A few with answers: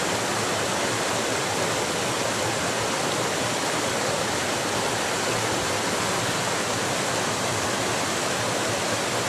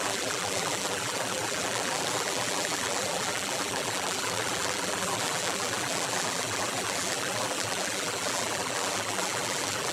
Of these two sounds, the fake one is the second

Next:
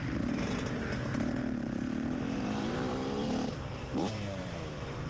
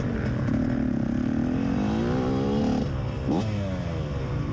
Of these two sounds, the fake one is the first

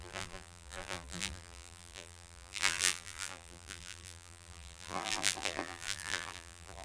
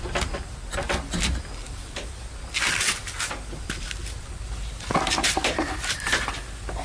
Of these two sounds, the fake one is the first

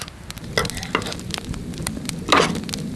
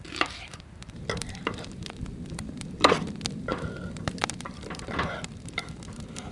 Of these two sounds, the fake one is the second